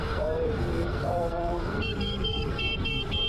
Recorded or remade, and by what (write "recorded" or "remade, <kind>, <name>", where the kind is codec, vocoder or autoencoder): remade, codec, SNAC